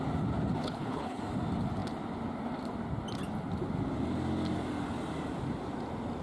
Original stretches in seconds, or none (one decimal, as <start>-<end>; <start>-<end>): 0.0-0.6; 1.2-6.2